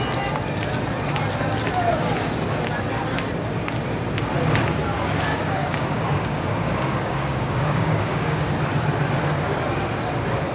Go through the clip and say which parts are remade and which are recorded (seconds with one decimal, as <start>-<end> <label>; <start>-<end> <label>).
0.0-5.3 recorded; 5.3-8.5 remade; 8.5-10.5 recorded